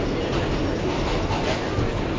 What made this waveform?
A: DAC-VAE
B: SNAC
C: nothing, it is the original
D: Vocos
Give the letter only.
C